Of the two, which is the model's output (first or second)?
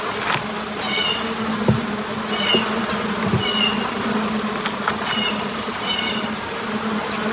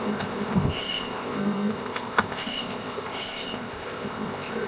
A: second